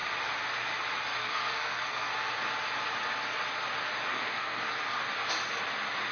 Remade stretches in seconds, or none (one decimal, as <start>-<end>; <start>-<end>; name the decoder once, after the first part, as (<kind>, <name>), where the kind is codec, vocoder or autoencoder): 1.2-2.1 (codec, SNAC); 4.1-4.7